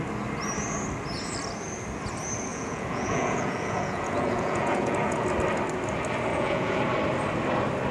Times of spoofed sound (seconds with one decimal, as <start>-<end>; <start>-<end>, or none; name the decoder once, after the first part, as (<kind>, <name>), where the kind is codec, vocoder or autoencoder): 2.5-5.3 (vocoder, Vocos); 6.3-6.8